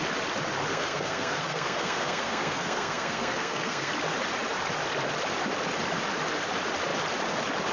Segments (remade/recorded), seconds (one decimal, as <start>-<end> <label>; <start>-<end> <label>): 0.0-0.7 recorded; 0.7-3.9 remade; 3.9-7.7 recorded

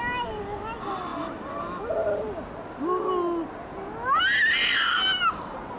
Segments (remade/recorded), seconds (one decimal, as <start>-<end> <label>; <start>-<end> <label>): 0.0-5.8 recorded

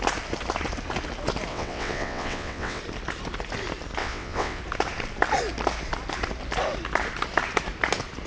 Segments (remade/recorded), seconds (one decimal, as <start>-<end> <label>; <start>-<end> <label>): 0.0-1.5 recorded; 1.5-2.8 remade; 2.8-4.0 recorded; 4.0-4.6 remade; 4.6-8.3 recorded

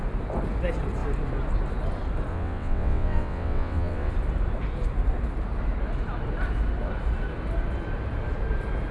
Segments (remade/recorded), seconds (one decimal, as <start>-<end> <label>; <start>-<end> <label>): 0.0-2.3 recorded; 2.3-4.1 remade; 4.1-8.9 recorded

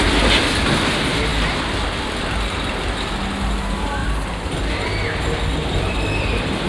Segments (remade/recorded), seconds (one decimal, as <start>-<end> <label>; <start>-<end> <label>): 0.0-6.7 recorded

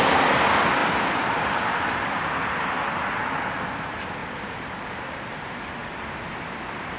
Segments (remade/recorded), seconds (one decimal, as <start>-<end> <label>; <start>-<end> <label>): 0.0-7.0 recorded